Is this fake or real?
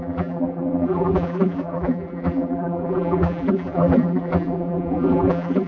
fake